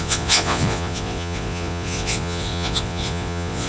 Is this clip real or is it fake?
fake